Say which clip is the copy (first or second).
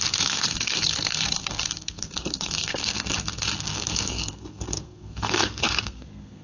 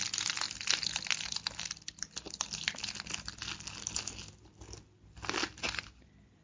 first